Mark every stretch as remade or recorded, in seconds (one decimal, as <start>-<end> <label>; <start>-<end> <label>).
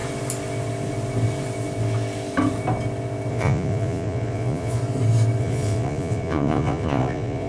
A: 0.0-3.3 recorded; 3.3-4.8 remade; 4.8-5.4 recorded; 5.4-7.5 remade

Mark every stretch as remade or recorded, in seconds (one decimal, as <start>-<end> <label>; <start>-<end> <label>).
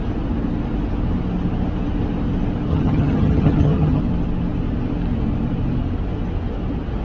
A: 0.0-2.7 recorded; 2.7-4.0 remade; 4.0-7.0 recorded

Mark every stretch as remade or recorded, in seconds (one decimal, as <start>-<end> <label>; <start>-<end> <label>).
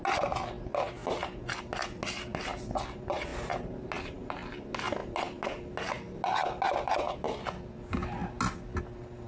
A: 0.0-9.3 recorded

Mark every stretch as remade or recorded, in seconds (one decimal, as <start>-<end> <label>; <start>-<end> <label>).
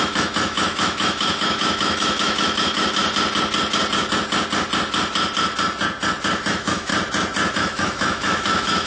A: 0.0-3.0 remade; 3.0-6.5 recorded; 6.5-6.9 remade; 6.9-7.5 recorded; 7.5-8.9 remade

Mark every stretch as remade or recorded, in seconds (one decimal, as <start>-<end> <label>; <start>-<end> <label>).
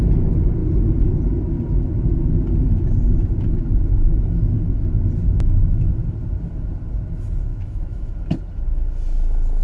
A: 0.0-7.5 recorded; 7.5-8.1 remade; 8.1-9.6 recorded